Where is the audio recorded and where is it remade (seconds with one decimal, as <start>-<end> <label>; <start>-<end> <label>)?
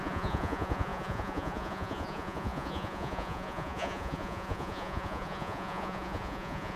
0.0-6.8 remade